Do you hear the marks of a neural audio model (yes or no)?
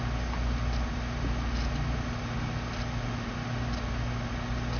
no